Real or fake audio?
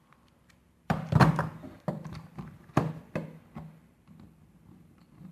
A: fake